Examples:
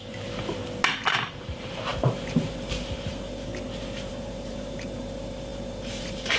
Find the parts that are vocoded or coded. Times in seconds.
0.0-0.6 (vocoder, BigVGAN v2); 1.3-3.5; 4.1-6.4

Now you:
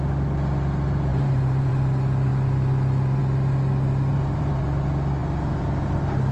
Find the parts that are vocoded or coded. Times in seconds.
1.1-1.7 (vocoder, BigVGAN v2); 4.1-4.6; 5.2-6.3

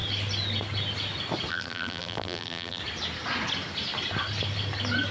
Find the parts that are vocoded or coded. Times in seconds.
1.5-2.8 (vocoder, BigVGAN v2)

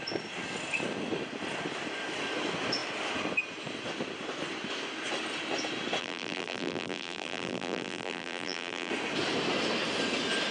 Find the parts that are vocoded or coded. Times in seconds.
6.0-8.9 (vocoder, BigVGAN v2)

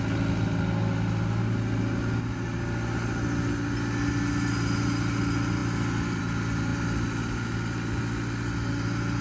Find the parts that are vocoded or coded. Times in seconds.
none

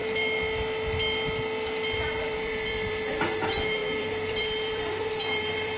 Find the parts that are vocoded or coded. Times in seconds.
2.2-5.8 (vocoder, BigVGAN v2)

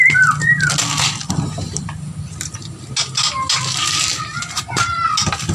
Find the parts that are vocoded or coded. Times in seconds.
none